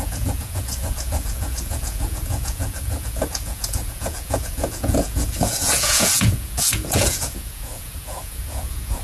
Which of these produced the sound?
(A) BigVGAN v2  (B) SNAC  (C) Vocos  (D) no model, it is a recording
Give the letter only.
C